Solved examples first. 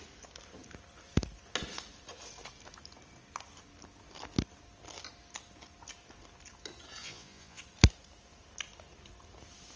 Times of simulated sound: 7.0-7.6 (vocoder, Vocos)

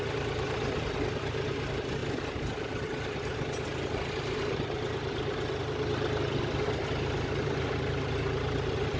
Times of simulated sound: none

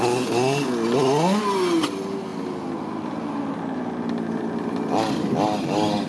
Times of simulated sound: none

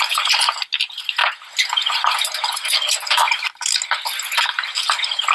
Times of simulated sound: none

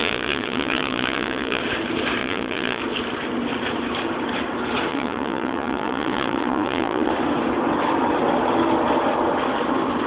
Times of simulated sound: 0.0-1.6 (vocoder, Vocos); 2.2-2.8; 4.9-7.1

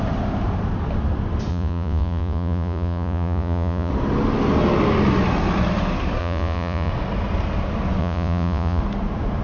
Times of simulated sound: 1.5-3.9 (vocoder, Vocos); 6.2-6.9; 8.0-8.8